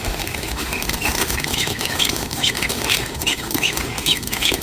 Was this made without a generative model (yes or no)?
no